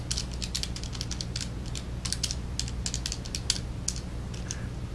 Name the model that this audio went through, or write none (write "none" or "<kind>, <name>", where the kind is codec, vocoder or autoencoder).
none